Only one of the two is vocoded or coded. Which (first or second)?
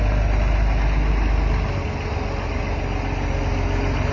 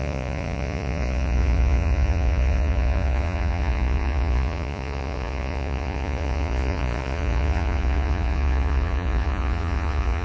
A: second